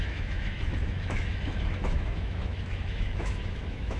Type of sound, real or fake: fake